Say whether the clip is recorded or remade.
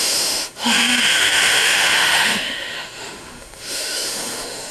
remade